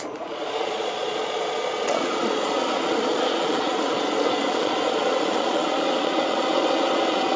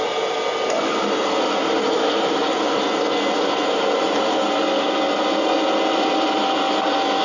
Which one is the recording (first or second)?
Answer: second